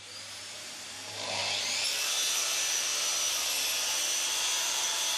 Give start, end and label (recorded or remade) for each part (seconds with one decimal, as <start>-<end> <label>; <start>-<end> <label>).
0.0-1.4 remade; 1.4-2.0 recorded; 2.0-2.9 remade; 2.9-4.6 recorded; 4.6-5.2 remade